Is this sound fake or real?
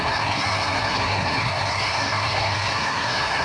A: fake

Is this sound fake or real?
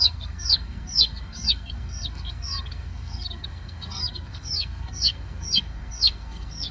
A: fake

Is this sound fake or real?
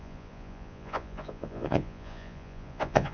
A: fake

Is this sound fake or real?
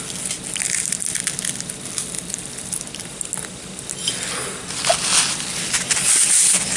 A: real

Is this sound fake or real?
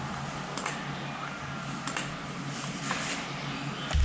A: real